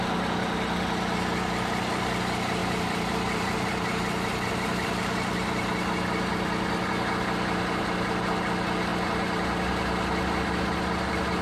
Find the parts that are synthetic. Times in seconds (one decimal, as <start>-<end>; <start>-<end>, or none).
2.6-4.5; 6.3-6.9; 8.9-9.7